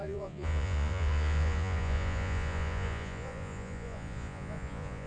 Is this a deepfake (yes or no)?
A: yes